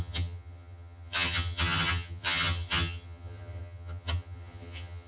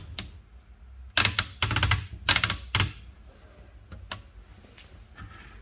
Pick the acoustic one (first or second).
second